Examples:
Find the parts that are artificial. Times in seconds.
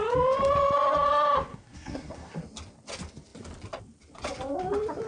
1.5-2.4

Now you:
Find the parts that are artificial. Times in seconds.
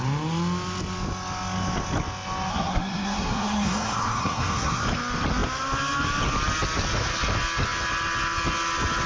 2.5-4.8